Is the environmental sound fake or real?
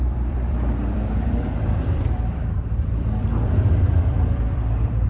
fake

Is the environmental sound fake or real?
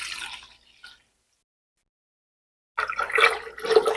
real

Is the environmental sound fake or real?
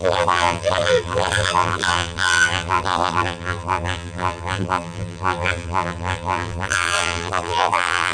fake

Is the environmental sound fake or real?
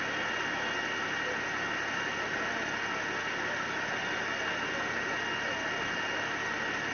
real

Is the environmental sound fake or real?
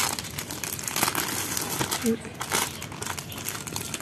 real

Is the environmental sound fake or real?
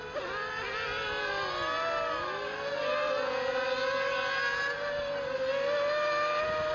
real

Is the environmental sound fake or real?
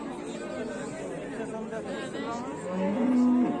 real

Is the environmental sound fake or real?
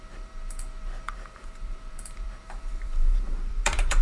fake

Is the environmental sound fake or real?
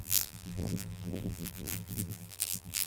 fake